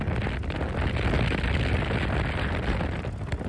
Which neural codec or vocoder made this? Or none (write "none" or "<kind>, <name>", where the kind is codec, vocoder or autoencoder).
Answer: none